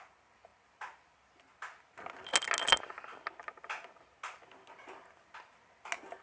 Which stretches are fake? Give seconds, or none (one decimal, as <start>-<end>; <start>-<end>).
none